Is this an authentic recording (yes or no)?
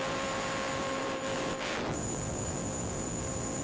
no